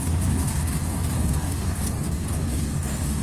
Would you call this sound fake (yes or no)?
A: yes